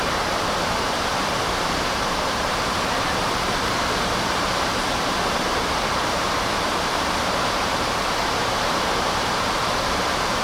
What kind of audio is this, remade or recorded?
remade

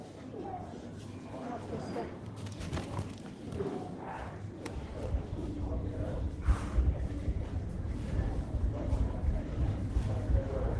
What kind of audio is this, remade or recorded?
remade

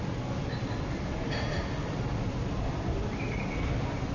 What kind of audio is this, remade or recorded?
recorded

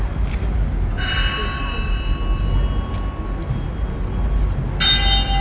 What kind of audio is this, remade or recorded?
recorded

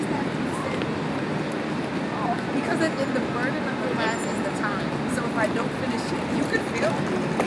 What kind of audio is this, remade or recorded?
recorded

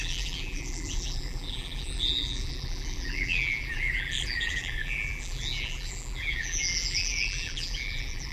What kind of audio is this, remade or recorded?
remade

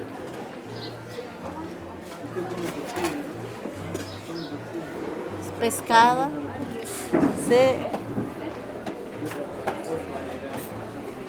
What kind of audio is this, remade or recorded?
recorded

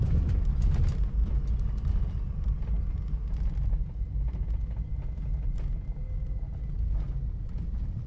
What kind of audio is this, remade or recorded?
recorded